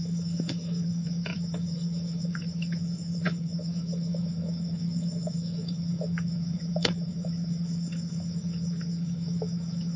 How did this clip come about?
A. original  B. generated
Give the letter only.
B